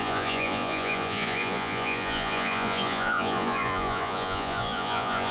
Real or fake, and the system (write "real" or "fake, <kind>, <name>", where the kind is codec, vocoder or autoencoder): fake, vocoder, Vocos